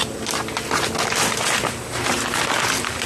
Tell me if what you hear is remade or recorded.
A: recorded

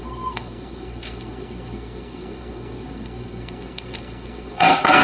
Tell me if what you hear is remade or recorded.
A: remade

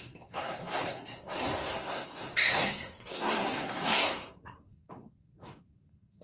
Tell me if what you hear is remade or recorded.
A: remade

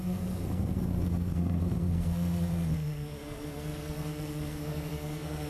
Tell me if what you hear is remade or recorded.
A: remade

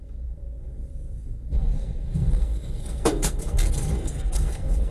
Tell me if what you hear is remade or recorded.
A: remade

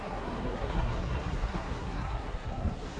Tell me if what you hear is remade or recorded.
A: remade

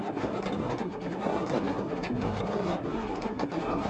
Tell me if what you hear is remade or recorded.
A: remade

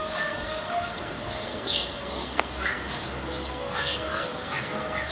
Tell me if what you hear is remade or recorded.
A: remade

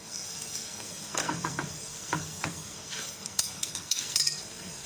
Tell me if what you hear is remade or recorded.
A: remade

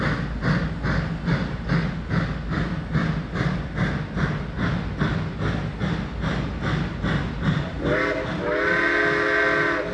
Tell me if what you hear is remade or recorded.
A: recorded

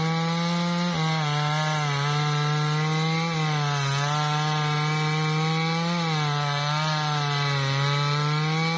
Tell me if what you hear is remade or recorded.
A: recorded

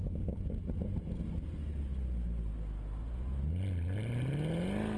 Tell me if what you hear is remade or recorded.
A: recorded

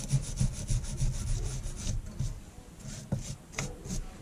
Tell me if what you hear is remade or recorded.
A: recorded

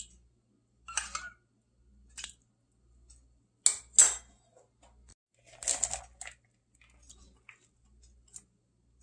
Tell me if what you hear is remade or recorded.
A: recorded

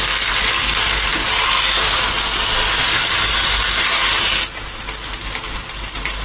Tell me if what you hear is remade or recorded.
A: recorded